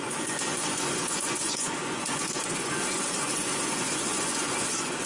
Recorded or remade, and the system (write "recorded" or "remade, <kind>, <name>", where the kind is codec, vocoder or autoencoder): remade, vocoder, Vocos